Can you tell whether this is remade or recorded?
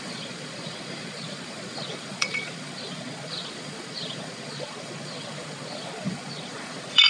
remade